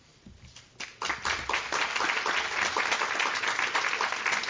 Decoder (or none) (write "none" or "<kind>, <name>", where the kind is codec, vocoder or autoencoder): none